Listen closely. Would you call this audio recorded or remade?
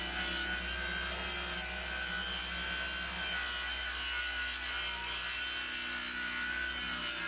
recorded